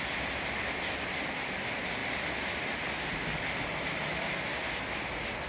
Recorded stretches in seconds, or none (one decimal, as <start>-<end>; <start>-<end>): 0.0-5.5

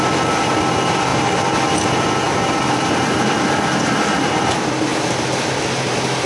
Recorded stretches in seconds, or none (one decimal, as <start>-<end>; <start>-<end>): 0.0-1.1; 4.3-4.9

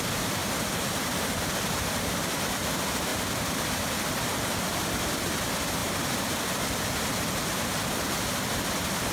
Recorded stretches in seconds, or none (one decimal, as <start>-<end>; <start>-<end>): 0.0-0.4; 1.6-3.1; 3.7-9.1

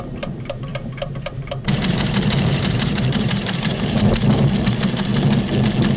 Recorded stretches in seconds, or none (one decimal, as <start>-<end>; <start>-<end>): 0.7-1.3; 5.1-6.0

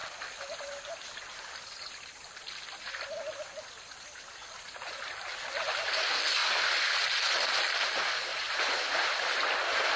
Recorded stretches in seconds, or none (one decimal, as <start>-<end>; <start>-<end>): 0.0-8.3; 9.1-10.0

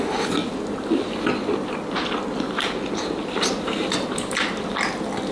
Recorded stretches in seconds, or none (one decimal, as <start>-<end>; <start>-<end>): 0.0-5.3